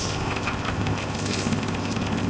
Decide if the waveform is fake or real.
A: fake